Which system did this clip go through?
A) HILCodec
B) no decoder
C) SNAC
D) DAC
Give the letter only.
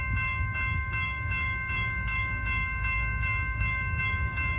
D